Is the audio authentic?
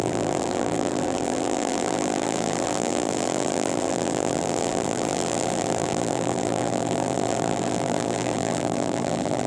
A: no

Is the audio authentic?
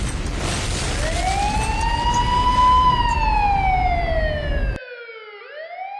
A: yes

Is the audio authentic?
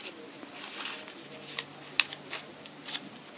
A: yes